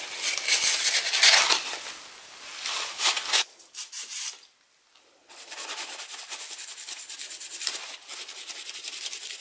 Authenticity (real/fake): real